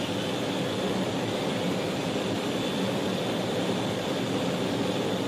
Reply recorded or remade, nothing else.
recorded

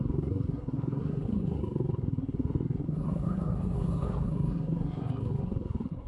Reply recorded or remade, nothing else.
remade